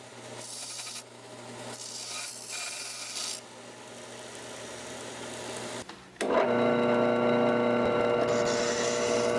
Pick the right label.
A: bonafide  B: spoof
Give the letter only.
A